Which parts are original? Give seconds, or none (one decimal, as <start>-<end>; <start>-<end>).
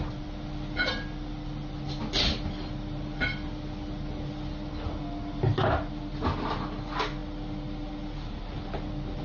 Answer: 0.0-9.2